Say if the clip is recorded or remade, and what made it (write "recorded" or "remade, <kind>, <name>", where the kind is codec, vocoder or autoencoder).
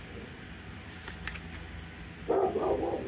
recorded